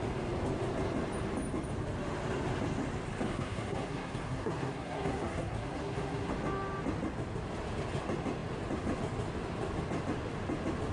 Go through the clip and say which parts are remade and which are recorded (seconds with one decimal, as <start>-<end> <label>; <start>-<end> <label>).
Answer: 0.0-3.3 recorded; 3.3-6.3 remade; 6.3-10.9 recorded